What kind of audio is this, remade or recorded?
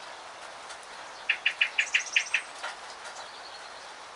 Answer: recorded